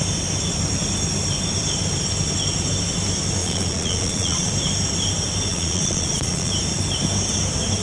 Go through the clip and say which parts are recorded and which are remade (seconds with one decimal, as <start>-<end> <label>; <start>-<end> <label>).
0.0-3.4 recorded; 3.4-4.5 remade; 4.5-5.5 recorded; 5.5-6.5 remade; 6.5-7.8 recorded